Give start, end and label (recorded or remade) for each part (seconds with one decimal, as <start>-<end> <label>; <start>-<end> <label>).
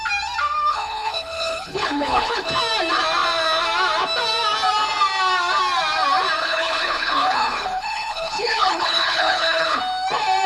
0.0-0.7 recorded; 0.7-2.5 remade; 2.5-6.4 recorded; 6.4-9.8 remade; 9.8-10.5 recorded